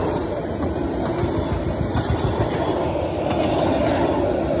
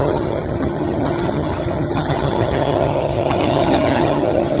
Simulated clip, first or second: second